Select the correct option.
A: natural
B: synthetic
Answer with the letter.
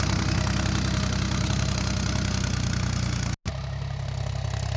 A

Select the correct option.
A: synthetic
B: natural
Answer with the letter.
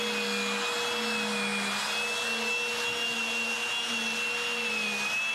B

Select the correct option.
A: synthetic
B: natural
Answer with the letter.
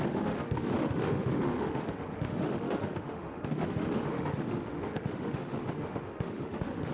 A